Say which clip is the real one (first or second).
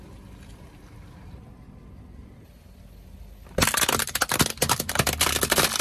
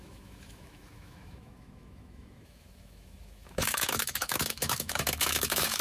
first